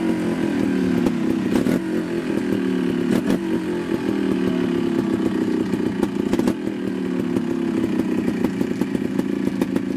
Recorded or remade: recorded